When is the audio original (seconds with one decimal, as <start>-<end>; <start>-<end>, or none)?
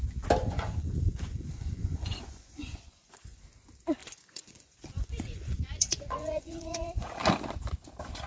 0.0-0.4; 3.4-4.0; 7.2-8.3